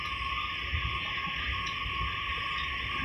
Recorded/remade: recorded